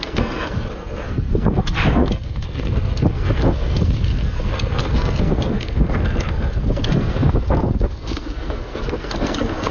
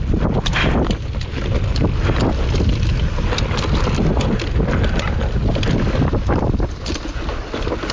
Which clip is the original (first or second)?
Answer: second